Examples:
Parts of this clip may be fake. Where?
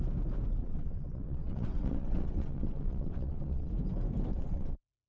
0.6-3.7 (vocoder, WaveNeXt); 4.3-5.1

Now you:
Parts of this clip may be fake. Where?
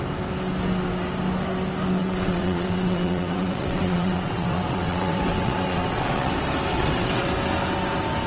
2.0-6.3 (vocoder, WaveNeXt); 6.7-7.3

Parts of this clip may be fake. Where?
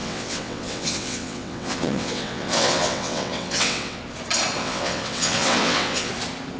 0.0-4.0 (vocoder, WaveNeXt); 4.6-6.1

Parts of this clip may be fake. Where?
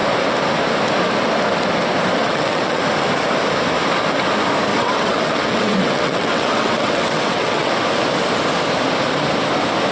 2.2-2.8 (vocoder, WaveNeXt); 4.7-7.7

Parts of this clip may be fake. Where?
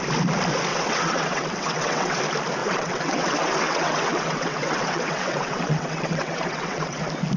0.7-2.2 (vocoder, WaveNeXt); 2.6-7.0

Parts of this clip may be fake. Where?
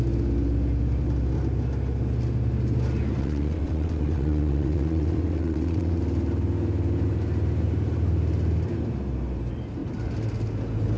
3.2-6.0 (vocoder, WaveNeXt)